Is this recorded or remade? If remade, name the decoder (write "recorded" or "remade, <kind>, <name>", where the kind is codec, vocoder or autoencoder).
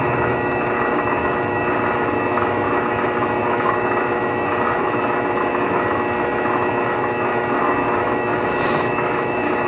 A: remade, autoencoder, DAC-VAE